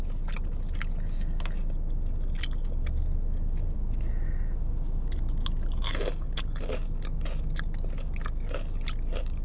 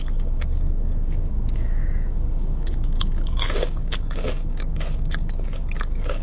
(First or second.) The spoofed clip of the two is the second